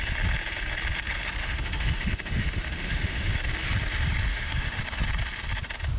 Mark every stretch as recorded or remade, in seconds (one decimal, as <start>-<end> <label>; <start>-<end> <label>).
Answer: 0.0-1.4 recorded; 1.4-3.3 remade; 3.3-4.3 recorded; 4.3-4.8 remade; 4.8-6.0 recorded

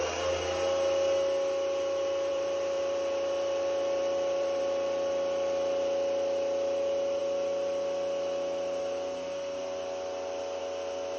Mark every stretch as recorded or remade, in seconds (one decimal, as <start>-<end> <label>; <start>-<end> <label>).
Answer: 0.0-2.3 recorded; 2.3-4.6 remade; 4.6-11.2 recorded

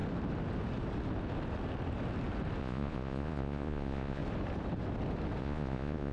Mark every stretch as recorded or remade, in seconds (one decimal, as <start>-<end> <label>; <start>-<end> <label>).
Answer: 0.0-2.6 recorded; 2.6-4.2 remade; 4.2-5.4 recorded; 5.4-6.1 remade

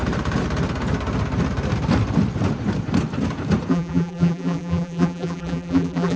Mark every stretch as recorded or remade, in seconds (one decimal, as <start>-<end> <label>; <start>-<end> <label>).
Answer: 0.0-3.7 recorded; 3.7-6.2 remade

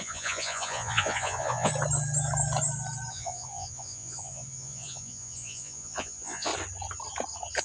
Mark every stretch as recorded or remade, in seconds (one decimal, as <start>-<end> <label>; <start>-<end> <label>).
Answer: 0.0-1.7 remade; 1.7-3.1 recorded; 3.1-6.5 remade; 6.5-7.6 recorded

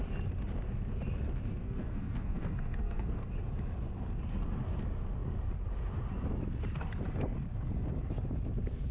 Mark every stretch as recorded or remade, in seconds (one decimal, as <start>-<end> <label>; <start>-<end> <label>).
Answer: 0.0-1.6 recorded; 1.6-3.3 remade; 3.3-8.9 recorded

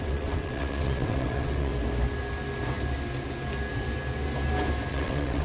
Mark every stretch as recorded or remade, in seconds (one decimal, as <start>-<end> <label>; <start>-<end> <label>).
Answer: 0.0-1.7 remade; 1.7-4.9 recorded; 4.9-5.4 remade